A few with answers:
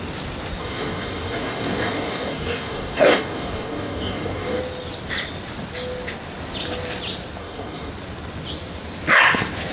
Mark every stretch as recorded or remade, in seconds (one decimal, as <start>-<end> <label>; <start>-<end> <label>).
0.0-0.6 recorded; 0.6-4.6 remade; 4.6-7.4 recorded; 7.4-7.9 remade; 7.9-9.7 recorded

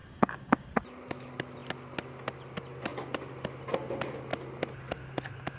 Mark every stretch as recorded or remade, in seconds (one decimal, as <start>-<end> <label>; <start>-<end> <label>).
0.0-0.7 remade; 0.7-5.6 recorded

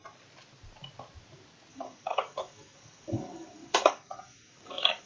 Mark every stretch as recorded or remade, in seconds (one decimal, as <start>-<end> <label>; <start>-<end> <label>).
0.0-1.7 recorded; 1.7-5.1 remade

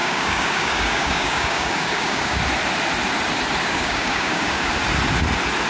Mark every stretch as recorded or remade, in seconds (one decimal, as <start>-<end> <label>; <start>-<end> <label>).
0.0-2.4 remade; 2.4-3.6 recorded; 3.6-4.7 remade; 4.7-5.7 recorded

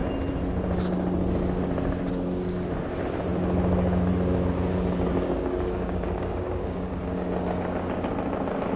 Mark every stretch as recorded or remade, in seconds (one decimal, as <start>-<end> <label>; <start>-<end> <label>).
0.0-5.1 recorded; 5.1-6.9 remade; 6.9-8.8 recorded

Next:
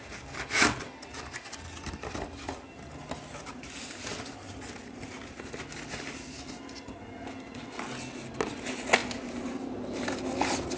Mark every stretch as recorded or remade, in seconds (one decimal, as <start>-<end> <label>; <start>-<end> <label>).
0.0-10.8 recorded

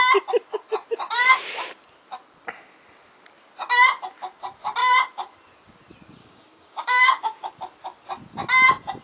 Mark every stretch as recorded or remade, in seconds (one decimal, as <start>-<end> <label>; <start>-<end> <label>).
0.0-6.2 recorded; 6.2-7.5 remade; 7.5-9.0 recorded